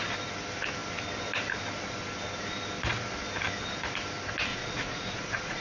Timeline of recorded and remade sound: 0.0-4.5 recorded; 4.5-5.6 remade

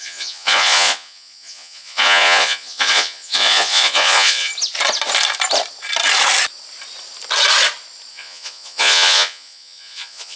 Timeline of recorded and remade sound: 0.0-4.5 remade; 4.5-8.1 recorded; 8.1-10.4 remade

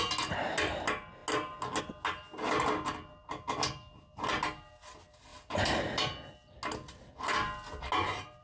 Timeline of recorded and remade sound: 0.0-8.4 recorded

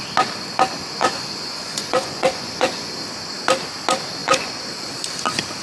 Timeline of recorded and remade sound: 0.0-1.0 recorded; 1.0-2.9 remade; 2.9-4.2 recorded; 4.2-4.9 remade; 4.9-5.6 recorded

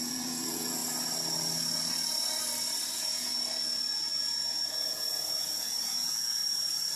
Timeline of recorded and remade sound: 0.0-0.8 remade; 0.8-2.9 recorded; 2.9-3.3 remade; 3.3-4.1 recorded; 4.1-6.4 remade; 6.4-7.0 recorded